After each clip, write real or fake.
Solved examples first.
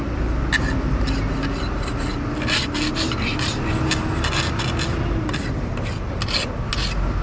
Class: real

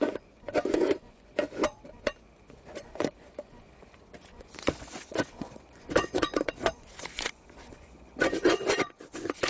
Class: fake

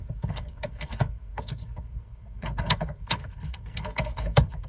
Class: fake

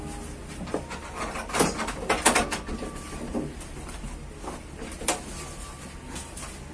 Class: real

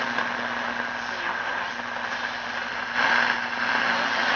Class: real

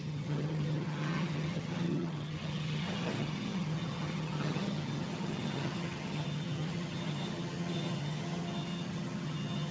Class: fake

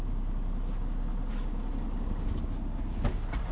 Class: real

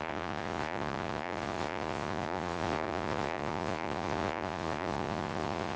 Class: fake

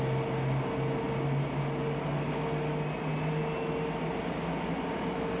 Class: real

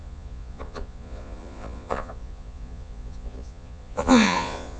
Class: fake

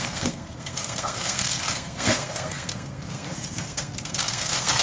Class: fake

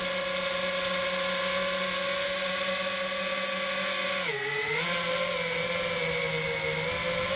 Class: real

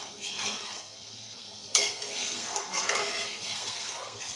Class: fake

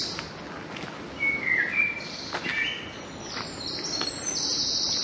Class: real